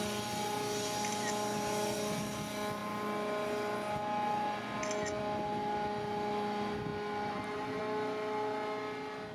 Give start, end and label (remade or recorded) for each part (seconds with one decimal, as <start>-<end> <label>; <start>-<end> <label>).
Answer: 0.0-9.3 recorded